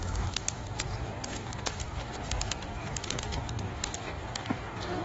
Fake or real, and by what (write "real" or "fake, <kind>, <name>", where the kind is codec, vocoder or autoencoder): fake, codec, DAC